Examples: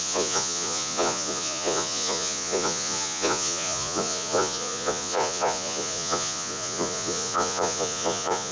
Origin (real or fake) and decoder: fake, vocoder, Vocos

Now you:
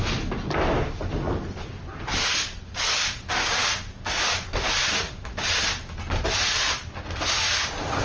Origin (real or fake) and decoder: real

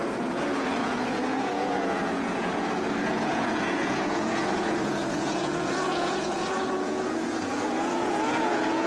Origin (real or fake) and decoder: fake, vocoder, Vocos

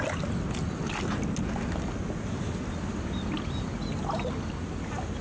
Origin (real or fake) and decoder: real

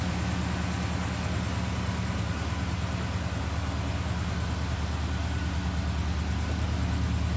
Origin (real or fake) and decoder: real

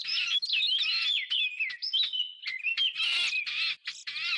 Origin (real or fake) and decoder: real